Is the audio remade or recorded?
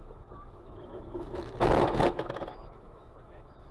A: remade